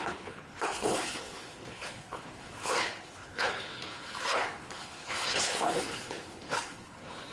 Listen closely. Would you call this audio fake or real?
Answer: fake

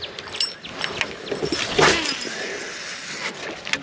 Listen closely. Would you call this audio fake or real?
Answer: real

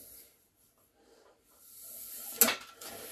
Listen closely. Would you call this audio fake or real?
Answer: real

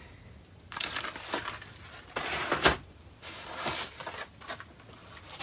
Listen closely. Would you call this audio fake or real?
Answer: real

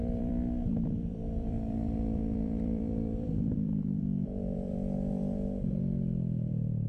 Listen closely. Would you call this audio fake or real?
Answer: fake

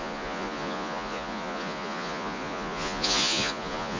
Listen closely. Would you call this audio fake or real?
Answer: fake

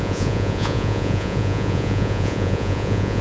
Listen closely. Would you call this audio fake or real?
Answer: fake